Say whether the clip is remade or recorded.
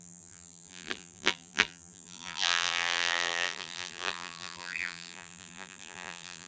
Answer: remade